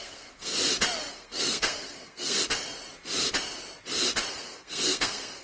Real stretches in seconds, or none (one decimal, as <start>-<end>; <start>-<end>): 0.5-1.1; 2.4-4.3